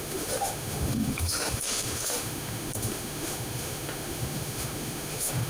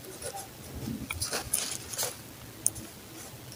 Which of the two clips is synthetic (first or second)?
first